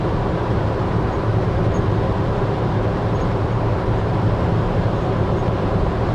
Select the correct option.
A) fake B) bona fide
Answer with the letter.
A